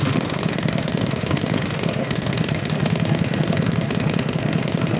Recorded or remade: remade